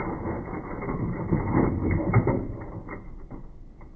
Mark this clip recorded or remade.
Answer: recorded